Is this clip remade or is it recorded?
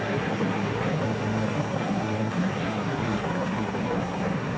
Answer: remade